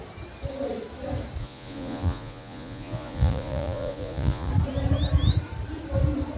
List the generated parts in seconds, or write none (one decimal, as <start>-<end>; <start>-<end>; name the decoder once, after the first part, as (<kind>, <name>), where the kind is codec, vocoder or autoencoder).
1.4-4.5 (vocoder, Vocos)